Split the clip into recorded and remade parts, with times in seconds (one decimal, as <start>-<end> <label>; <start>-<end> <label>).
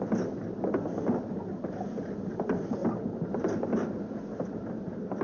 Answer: 0.0-5.2 recorded